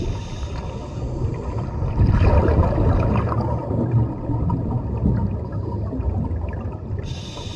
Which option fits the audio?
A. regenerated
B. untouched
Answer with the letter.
B